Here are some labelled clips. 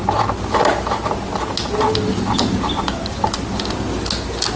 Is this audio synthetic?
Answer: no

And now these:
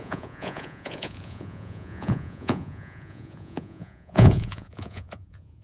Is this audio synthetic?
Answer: yes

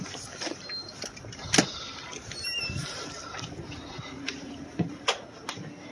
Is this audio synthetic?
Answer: no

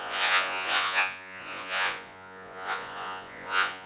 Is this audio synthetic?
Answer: yes